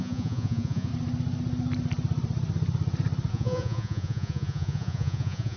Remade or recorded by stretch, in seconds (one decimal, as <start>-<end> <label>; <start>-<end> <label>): 0.0-0.9 remade; 0.9-3.3 recorded; 3.3-5.6 remade